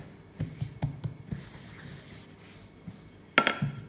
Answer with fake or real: real